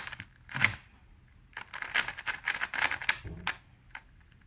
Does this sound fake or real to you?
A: real